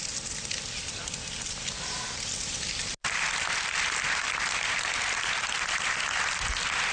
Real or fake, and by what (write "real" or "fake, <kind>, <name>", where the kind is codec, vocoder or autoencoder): real